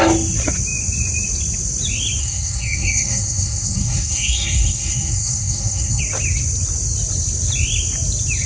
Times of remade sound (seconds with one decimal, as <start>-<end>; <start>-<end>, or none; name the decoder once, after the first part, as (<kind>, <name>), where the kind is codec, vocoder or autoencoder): 2.2-6.0 (codec, SNAC)

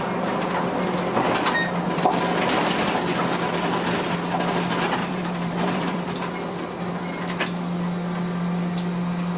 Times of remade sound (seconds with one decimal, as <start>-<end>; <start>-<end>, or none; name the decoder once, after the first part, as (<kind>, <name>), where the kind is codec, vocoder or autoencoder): 5.0-6.0 (vocoder, BigVGAN v2)